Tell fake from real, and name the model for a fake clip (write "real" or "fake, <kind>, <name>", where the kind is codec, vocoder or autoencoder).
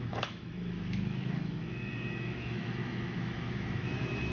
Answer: fake, autoencoder, DAC-VAE